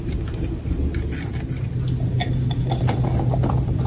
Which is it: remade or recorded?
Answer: recorded